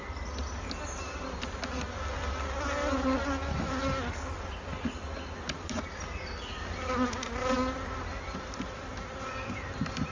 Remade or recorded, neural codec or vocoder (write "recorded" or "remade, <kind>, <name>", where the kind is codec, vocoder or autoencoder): recorded